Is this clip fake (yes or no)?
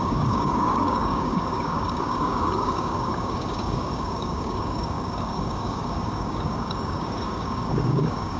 yes